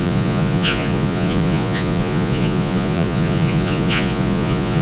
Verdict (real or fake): fake